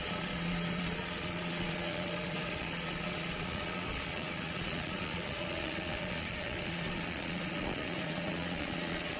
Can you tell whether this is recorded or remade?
remade